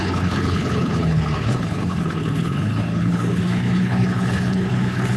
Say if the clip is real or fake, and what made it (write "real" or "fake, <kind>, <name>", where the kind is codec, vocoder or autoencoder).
fake, codec, HILCodec